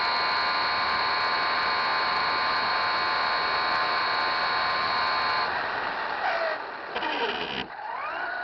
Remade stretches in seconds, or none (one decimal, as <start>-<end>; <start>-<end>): none